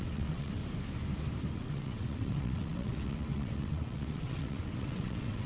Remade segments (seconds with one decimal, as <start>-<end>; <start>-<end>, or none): 0.0-0.6; 1.5-5.5